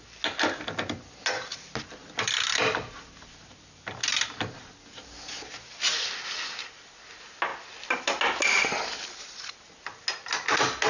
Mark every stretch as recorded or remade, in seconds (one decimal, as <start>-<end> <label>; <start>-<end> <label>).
0.0-10.9 recorded